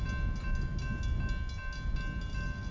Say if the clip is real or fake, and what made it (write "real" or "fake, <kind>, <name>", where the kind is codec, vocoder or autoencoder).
real